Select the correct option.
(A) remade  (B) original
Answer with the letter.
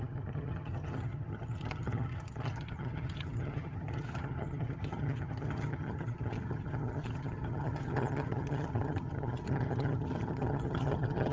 A